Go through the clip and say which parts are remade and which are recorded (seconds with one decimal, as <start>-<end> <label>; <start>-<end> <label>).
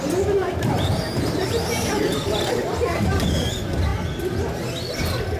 0.0-0.4 recorded; 0.4-2.0 remade; 2.0-5.4 recorded